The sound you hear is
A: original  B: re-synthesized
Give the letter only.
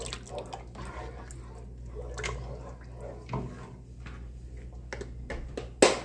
A